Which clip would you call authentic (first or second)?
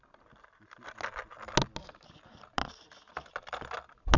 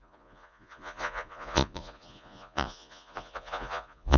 first